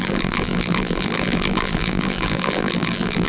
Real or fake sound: fake